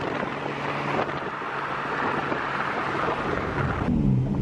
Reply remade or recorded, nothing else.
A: recorded